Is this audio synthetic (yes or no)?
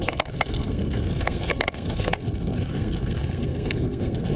yes